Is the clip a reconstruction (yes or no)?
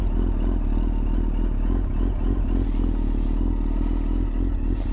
no